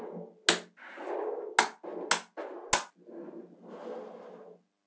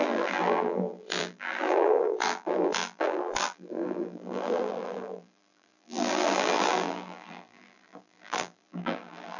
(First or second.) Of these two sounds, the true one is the first